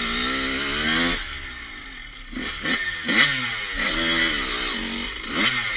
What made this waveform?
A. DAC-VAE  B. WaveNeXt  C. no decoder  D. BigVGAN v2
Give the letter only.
C